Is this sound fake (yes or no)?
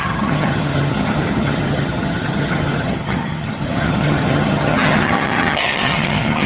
yes